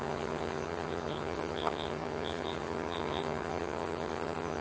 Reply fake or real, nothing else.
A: fake